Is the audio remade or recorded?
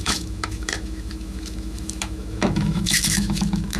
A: remade